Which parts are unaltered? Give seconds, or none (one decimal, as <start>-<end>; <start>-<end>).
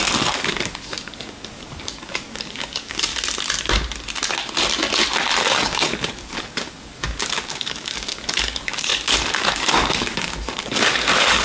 3.1-5.4